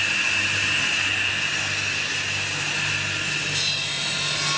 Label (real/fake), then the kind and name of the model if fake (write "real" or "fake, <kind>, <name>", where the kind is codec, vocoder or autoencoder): real